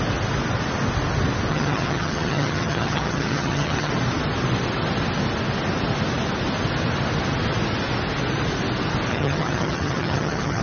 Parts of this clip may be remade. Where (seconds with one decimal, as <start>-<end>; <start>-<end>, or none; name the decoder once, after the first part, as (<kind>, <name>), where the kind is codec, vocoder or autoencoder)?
1.5-3.9 (vocoder, HiFi-GAN); 9.1-10.6